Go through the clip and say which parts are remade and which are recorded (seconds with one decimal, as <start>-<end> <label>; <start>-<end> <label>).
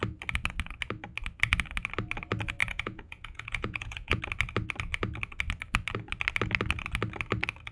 0.0-2.6 recorded; 2.6-4.2 remade; 4.2-7.7 recorded